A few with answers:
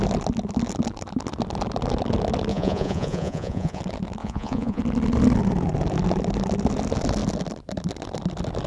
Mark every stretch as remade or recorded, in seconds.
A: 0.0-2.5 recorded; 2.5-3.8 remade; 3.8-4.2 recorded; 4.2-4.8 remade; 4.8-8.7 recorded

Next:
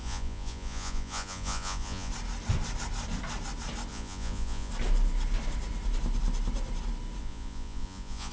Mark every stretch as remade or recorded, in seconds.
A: 0.0-2.1 remade; 2.1-3.9 recorded; 3.9-4.7 remade; 4.7-7.2 recorded; 7.2-8.3 remade